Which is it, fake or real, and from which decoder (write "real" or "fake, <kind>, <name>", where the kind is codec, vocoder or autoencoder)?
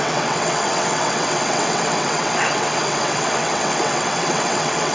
fake, vocoder, WaveNeXt